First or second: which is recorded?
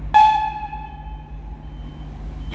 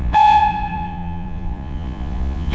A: first